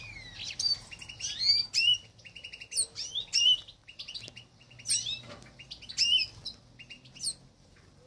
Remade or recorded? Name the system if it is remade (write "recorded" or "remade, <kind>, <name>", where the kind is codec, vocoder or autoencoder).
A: recorded